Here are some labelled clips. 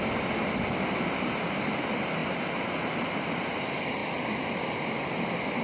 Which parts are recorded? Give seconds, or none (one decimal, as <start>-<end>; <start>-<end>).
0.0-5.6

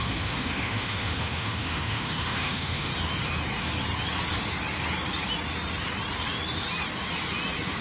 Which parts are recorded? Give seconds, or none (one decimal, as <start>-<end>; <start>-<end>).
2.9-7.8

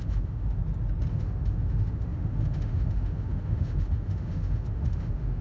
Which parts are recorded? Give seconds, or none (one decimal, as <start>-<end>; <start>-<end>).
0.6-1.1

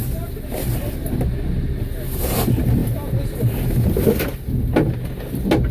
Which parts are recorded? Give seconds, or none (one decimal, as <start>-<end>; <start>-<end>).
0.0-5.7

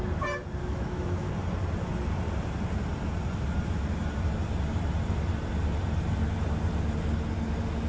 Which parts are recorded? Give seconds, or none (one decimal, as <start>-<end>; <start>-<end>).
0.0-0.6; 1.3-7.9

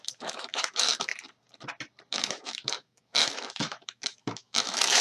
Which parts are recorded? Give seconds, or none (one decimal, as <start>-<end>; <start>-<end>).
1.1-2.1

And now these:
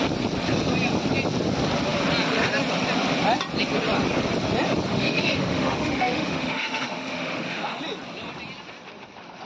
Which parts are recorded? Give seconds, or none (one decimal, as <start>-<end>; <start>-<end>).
0.0-4.9; 7.8-9.5